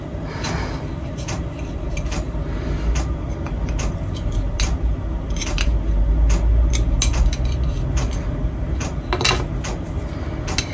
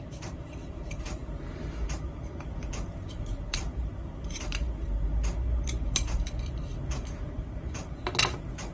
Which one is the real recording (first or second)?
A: first